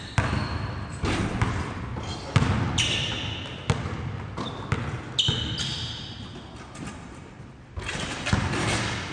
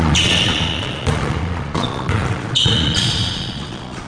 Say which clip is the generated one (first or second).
second